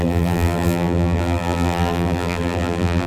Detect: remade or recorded remade